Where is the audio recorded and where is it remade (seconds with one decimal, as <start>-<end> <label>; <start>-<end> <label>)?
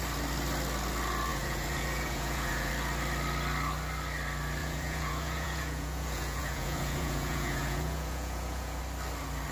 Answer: 0.0-1.3 recorded; 1.3-2.7 remade; 2.7-4.6 recorded; 4.6-8.8 remade; 8.8-9.5 recorded